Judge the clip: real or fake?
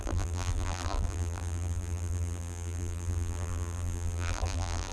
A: fake